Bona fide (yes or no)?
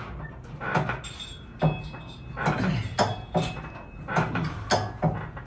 yes